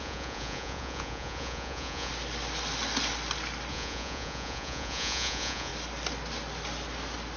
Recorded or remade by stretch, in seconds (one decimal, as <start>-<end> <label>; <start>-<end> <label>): 0.0-2.1 remade; 2.1-3.7 recorded; 3.7-5.7 remade; 5.7-7.4 recorded